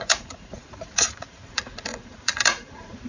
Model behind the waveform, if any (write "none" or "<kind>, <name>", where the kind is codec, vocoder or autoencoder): vocoder, Vocos